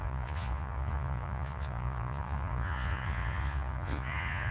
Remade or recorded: remade